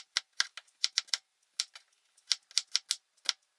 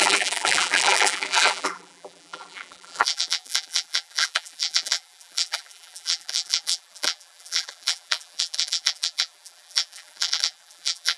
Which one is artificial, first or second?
second